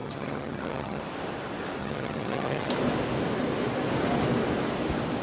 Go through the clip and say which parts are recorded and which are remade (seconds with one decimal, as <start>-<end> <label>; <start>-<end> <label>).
0.0-1.0 remade; 1.0-1.8 recorded; 1.8-2.7 remade; 2.7-5.2 recorded